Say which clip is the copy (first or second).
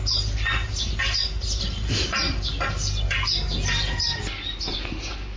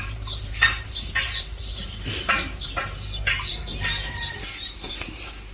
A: second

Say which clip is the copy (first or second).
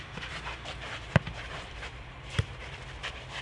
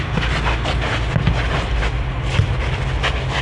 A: first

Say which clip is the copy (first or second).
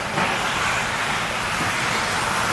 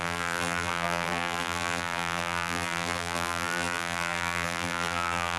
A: second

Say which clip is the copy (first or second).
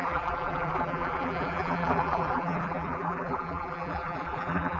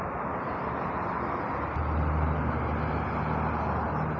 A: first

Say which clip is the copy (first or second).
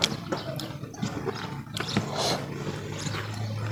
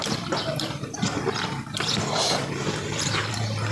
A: second